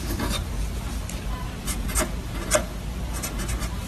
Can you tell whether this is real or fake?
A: real